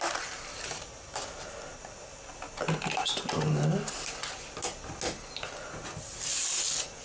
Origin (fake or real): real